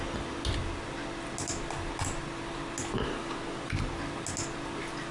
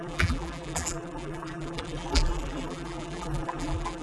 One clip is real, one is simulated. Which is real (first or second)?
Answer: first